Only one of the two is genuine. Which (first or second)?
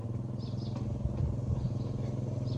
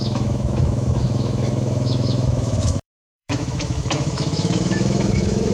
first